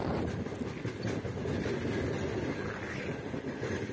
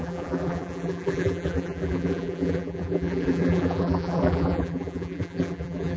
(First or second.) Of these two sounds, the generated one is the second